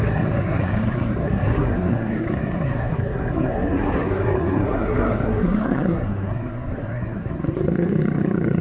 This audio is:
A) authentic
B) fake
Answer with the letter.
B